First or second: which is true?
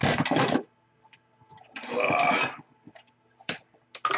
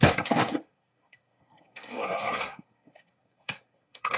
first